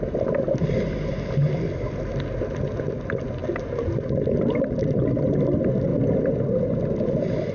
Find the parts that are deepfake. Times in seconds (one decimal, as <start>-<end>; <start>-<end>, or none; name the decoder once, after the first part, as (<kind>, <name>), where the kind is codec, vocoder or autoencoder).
none